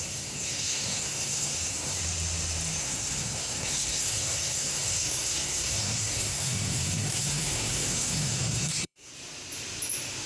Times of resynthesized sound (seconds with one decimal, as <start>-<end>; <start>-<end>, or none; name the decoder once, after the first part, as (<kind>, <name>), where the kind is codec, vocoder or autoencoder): 0.0-2.0 (codec, SNAC); 2.8-9.1